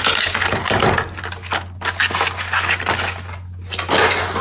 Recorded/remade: recorded